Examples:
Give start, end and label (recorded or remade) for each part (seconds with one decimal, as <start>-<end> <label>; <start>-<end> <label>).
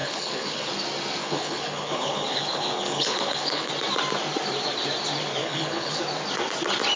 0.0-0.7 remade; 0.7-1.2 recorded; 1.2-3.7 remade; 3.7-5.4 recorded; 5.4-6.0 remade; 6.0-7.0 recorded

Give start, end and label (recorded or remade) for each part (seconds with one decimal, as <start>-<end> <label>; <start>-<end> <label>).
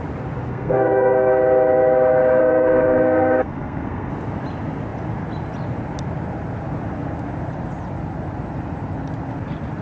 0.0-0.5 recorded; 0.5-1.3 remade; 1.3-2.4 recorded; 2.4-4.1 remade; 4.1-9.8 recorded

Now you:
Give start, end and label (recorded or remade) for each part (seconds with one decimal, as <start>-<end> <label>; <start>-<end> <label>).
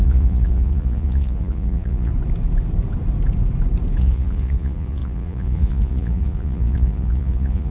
0.0-2.1 remade; 2.1-4.0 recorded; 4.0-7.7 remade